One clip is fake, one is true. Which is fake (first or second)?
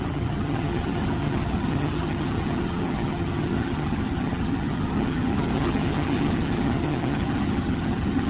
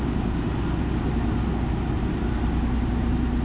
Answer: first